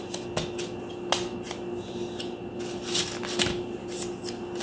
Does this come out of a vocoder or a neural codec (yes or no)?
no